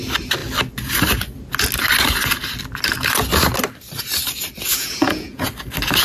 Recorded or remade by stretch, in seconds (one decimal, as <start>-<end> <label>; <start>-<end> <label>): 0.0-4.7 recorded; 4.7-5.5 remade; 5.5-6.0 recorded